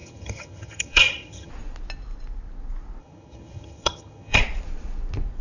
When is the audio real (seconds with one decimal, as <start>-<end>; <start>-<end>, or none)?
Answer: 1.5-3.0; 4.4-5.4